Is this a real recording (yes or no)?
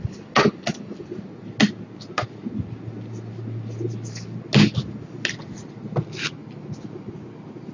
yes